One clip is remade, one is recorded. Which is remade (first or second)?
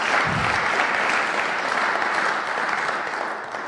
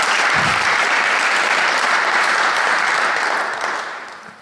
second